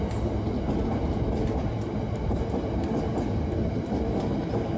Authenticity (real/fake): real